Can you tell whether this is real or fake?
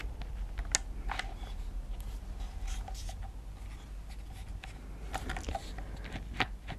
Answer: real